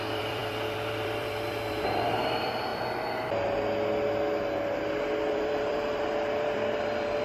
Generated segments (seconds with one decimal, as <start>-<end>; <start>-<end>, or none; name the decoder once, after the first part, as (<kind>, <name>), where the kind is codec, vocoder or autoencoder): 0.0-2.7 (vocoder, BigVGAN v2); 5.3-7.2